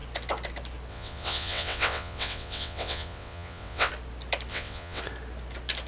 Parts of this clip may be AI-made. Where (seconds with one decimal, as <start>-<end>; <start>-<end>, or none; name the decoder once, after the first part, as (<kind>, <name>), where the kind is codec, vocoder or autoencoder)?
0.9-3.9 (vocoder, WaveNeXt); 4.5-5.0

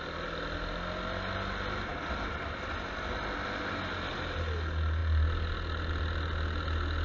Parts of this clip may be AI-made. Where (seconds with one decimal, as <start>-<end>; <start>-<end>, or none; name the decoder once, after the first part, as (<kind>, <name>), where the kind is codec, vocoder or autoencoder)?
none

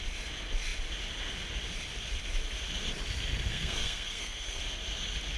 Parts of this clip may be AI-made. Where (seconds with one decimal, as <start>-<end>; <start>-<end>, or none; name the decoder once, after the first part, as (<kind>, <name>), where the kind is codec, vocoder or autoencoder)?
3.5-4.6 (codec, SNAC)

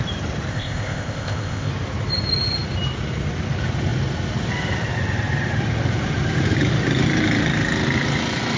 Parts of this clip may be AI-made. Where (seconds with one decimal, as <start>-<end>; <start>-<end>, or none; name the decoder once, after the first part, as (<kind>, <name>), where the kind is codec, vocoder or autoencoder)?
0.5-1.7 (codec, ZipCodec)

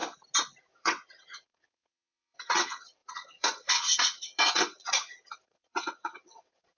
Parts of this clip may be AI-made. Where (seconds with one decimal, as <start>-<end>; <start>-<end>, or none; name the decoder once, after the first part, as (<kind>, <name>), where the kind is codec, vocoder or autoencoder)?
0.6-6.8 (vocoder, WaveNeXt)

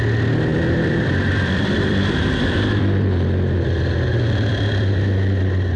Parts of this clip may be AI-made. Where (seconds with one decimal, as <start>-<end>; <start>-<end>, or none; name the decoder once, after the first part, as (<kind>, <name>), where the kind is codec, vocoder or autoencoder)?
0.5-2.8 (vocoder, BigVGAN v2)

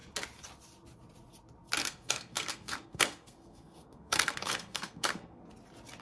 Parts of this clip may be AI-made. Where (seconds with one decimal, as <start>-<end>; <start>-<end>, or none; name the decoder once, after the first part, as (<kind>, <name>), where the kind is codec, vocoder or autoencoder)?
1.8-5.4 (codec, SNAC)